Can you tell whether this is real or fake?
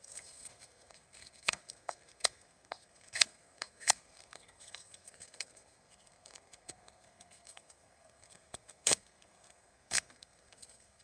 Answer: fake